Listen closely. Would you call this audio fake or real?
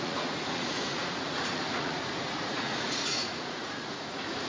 fake